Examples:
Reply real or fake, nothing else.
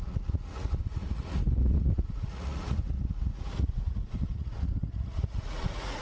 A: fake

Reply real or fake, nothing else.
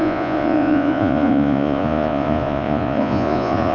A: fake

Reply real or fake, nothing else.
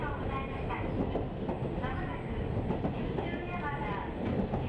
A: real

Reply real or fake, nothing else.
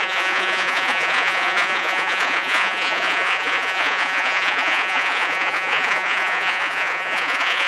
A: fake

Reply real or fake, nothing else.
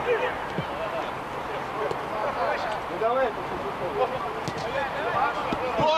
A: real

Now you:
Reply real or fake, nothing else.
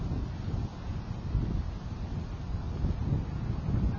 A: real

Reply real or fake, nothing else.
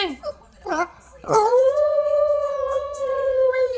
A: fake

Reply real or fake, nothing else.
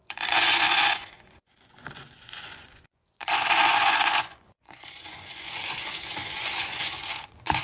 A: fake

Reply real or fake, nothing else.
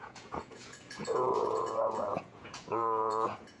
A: fake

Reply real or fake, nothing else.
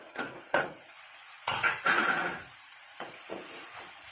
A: fake